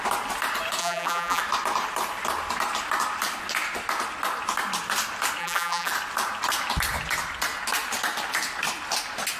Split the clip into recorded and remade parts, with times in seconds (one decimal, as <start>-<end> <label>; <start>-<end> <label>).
0.0-0.8 recorded; 0.8-1.4 remade; 1.4-5.4 recorded; 5.4-5.9 remade; 5.9-9.4 recorded